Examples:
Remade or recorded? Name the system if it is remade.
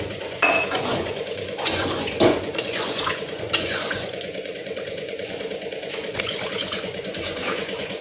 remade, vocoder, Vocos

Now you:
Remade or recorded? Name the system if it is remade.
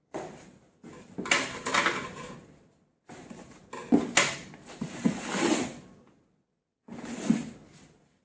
recorded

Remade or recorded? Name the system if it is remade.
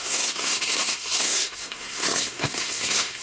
remade, codec, SNAC